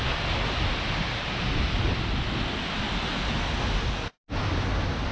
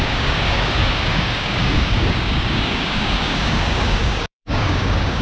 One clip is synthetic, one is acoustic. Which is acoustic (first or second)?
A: first